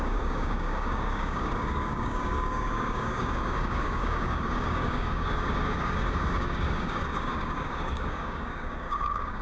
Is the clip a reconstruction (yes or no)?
yes